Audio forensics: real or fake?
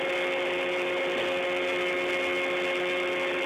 real